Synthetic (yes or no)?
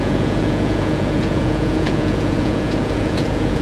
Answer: yes